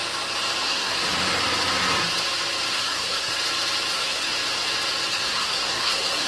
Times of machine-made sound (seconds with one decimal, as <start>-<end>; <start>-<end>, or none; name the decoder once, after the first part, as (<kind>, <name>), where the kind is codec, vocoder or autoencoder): 0.6-1.0 (codec, SNAC); 2.7-3.3; 3.9-4.3; 5.1-6.3